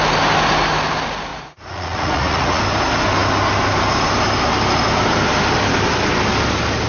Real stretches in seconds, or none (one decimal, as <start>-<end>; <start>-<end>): 0.0-1.3; 2.6-6.9